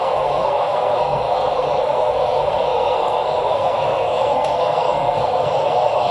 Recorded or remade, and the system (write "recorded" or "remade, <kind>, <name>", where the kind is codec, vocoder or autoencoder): remade, codec, SNAC